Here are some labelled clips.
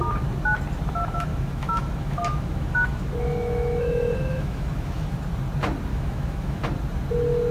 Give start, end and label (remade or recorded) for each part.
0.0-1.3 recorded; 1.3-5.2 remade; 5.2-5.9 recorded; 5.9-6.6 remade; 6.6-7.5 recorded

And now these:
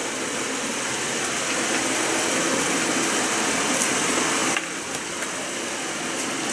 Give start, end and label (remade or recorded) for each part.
0.0-6.5 recorded

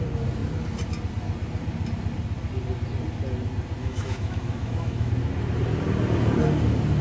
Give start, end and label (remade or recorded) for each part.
0.0-3.8 recorded; 3.8-5.1 remade; 5.1-7.0 recorded

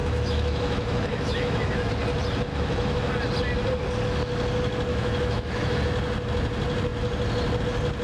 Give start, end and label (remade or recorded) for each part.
0.0-1.9 remade; 1.9-2.5 recorded; 2.5-3.1 remade; 3.1-4.9 recorded; 4.9-5.8 remade; 5.8-8.0 recorded

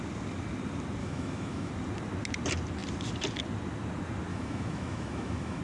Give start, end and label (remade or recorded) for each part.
0.0-1.0 recorded; 1.0-1.7 remade; 1.7-4.3 recorded; 4.3-5.6 remade

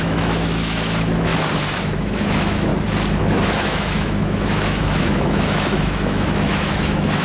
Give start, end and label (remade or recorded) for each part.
0.0-1.3 remade; 1.3-1.8 recorded; 1.8-2.7 remade; 2.7-3.2 recorded; 3.2-7.2 remade

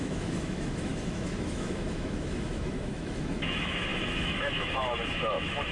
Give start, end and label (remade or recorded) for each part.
0.0-5.7 remade